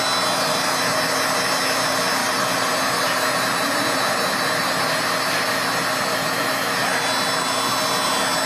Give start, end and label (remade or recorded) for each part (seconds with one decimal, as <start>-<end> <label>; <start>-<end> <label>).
0.0-2.2 recorded; 2.2-2.7 remade; 2.7-8.5 recorded